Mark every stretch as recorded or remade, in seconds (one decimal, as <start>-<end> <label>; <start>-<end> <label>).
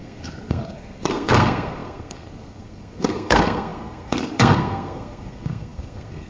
0.0-6.3 remade